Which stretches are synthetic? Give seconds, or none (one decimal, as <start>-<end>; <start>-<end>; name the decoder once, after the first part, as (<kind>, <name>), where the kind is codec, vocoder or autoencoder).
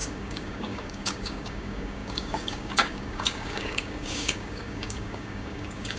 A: 0.0-6.0 (codec, DAC)